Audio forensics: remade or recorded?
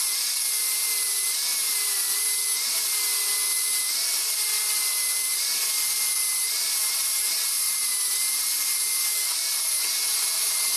recorded